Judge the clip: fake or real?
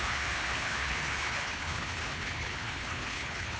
fake